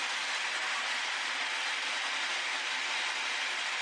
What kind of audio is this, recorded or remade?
remade